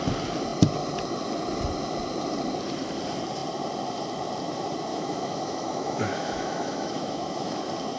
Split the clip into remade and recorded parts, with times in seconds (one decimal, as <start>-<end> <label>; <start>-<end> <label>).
0.0-4.9 recorded; 4.9-7.6 remade; 7.6-8.0 recorded